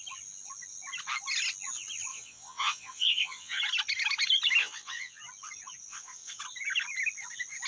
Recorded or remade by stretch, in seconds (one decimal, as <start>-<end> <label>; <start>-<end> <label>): 0.0-2.1 recorded; 2.1-3.6 remade; 3.6-4.6 recorded; 4.6-5.2 remade; 5.2-5.9 recorded; 5.9-6.4 remade; 6.4-7.7 recorded